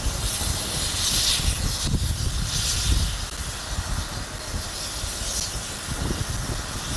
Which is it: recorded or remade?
recorded